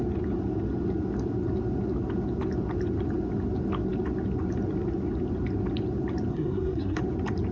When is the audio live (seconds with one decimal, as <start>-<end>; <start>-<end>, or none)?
0.0-6.3; 7.0-7.5